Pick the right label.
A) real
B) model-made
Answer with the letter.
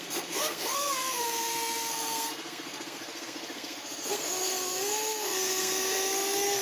B